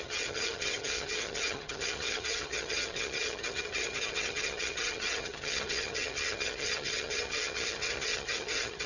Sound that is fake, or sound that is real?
fake